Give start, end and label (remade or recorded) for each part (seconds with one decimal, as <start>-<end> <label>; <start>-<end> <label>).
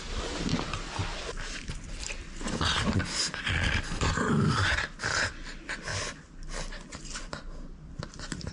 0.0-8.5 recorded